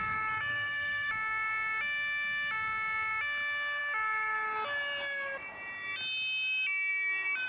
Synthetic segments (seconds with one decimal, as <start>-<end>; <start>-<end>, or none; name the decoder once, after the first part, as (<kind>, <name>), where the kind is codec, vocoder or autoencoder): 0.5-1.1 (codec, SNAC)

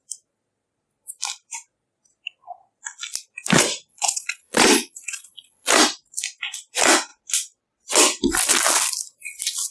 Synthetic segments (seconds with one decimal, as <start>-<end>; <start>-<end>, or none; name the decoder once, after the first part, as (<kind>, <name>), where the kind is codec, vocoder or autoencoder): 3.9-5.7 (vocoder, Vocos)

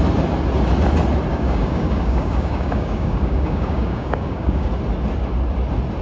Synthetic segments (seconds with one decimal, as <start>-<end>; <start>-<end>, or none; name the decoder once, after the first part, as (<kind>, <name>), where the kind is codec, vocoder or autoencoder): 1.3-4.7 (codec, DAC)

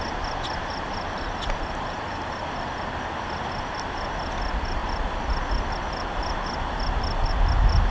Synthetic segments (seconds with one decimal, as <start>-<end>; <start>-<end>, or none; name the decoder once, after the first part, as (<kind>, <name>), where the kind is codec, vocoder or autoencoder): 0.7-1.9 (vocoder, BigVGAN v2)

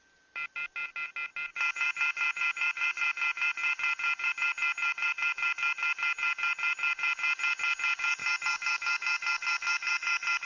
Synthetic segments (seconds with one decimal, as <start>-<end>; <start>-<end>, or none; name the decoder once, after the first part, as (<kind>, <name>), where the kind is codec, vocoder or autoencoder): none

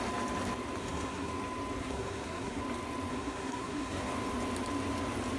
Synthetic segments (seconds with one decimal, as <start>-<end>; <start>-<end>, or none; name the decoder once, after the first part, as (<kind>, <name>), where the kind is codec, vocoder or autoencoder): 0.8-1.3 (codec, SNAC); 1.8-2.6; 3.1-4.1

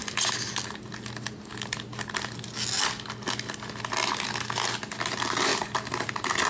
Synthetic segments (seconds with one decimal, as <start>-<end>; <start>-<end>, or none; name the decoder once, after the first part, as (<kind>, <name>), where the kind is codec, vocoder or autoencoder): 5.5-6.1 (vocoder, BigVGAN v2)

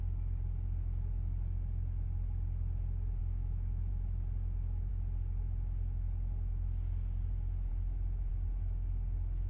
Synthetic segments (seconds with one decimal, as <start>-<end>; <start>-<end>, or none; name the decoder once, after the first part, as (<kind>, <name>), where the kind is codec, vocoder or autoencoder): 3.2-3.9 (autoencoder, DAC-VAE)